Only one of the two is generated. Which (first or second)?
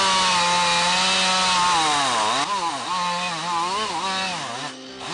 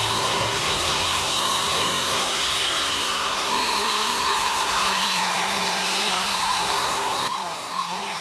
second